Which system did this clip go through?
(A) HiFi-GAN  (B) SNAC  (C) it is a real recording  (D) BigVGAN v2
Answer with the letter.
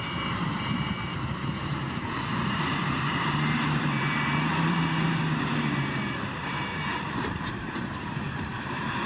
D